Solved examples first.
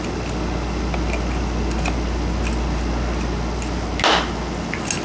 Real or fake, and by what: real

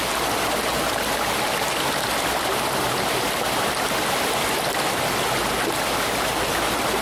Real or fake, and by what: real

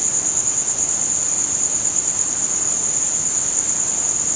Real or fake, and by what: real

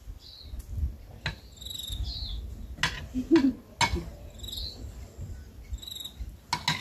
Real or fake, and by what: real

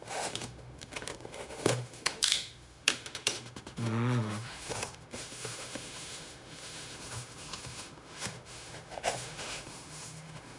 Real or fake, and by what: fake, autoencoder, DAC-VAE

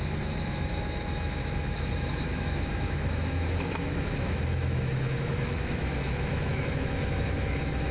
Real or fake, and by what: fake, autoencoder, DAC-VAE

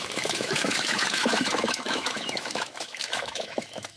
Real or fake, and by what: fake, autoencoder, DAC-VAE